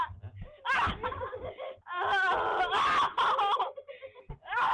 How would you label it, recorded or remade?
recorded